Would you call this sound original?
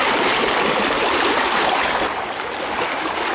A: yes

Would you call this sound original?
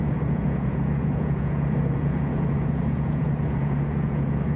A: no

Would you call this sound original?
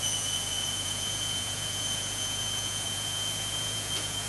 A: no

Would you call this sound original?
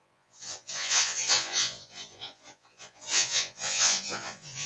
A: no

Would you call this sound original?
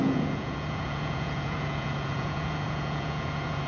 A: no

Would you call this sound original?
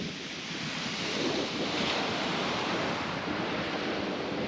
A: yes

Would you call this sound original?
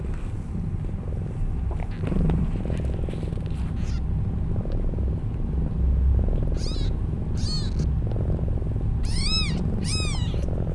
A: yes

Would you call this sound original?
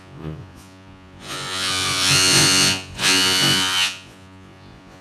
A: no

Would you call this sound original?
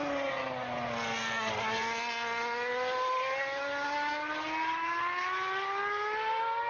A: yes